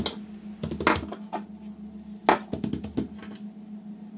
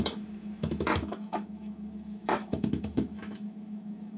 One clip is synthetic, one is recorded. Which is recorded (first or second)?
first